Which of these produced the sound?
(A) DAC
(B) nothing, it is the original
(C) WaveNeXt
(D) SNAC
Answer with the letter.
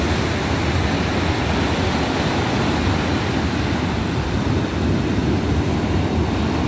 B